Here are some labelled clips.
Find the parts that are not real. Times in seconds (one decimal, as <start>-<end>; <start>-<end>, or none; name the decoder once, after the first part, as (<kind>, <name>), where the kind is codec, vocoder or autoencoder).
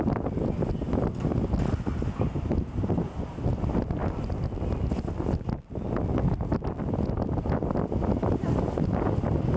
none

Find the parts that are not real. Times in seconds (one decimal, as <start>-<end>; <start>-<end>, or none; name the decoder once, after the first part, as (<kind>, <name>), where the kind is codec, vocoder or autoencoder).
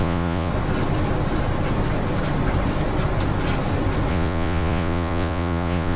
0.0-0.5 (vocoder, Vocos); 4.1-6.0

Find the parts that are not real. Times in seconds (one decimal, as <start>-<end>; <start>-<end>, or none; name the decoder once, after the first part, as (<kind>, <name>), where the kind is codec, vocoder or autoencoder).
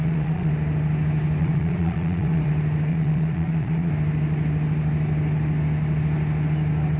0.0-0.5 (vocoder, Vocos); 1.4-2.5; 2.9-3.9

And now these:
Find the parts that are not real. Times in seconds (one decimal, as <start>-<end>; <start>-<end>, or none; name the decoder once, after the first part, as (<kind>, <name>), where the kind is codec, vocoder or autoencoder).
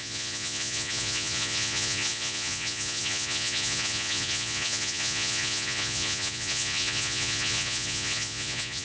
0.0-8.8 (vocoder, Vocos)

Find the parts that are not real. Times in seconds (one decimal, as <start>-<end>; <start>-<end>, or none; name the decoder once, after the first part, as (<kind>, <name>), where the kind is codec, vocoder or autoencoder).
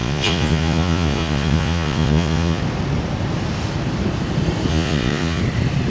0.0-2.6 (vocoder, Vocos); 4.7-5.4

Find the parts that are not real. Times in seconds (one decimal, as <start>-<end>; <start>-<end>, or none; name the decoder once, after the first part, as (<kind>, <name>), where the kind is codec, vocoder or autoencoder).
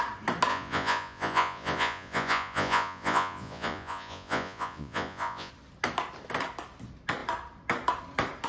0.5-5.5 (vocoder, Vocos)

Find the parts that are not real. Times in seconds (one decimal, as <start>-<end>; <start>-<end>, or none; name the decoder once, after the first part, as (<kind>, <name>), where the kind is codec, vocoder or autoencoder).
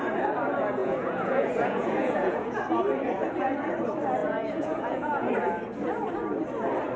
0.8-2.5 (vocoder, Vocos); 4.2-5.3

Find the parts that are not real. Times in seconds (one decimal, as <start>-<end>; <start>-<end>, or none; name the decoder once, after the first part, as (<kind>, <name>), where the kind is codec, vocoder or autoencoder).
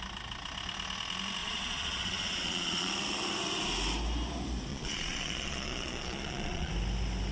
1.4-2.9 (vocoder, Vocos); 4.7-6.7